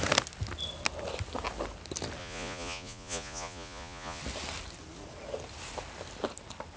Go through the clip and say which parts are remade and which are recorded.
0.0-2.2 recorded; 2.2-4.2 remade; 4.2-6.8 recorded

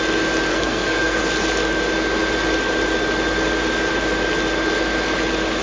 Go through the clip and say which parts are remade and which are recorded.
0.0-0.5 recorded; 0.5-1.2 remade; 1.2-5.6 recorded

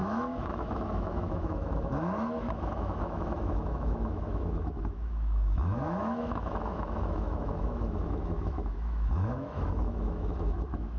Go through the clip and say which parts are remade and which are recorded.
0.0-11.0 remade

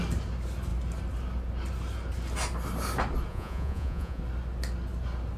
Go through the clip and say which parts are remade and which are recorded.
0.0-3.3 recorded; 3.3-4.2 remade; 4.2-5.4 recorded